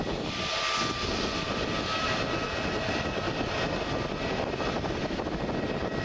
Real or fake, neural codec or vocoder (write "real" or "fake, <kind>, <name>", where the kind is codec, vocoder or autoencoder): real